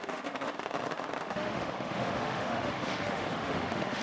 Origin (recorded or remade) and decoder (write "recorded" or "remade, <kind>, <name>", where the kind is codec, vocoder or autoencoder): remade, autoencoder, DAC-VAE